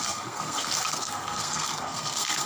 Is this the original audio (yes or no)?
no